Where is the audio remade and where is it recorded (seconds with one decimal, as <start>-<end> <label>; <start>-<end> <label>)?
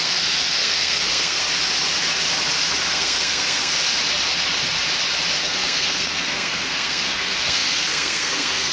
0.0-1.4 remade; 1.4-2.9 recorded; 2.9-3.7 remade; 3.7-5.4 recorded; 5.4-8.7 remade